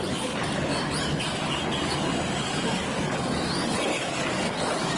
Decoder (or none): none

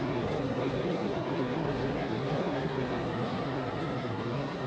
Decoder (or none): codec, SNAC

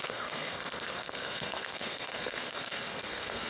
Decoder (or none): codec, SNAC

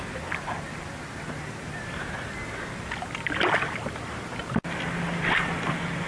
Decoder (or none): none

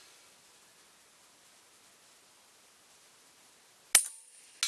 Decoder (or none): none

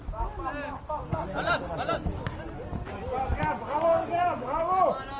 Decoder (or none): none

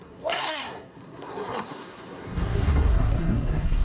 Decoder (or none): codec, SNAC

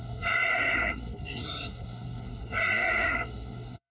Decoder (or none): codec, SNAC